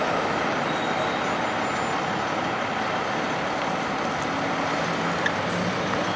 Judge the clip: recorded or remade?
recorded